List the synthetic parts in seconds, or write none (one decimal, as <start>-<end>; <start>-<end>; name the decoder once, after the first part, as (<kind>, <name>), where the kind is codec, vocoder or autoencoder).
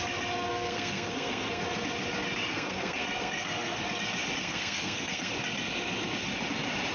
0.5-1.6 (codec, SNAC); 2.5-3.8; 4.4-5.3